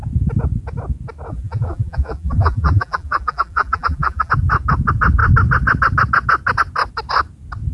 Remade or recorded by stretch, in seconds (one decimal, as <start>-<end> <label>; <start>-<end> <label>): 0.0-1.3 recorded; 1.3-4.3 remade; 4.3-7.7 recorded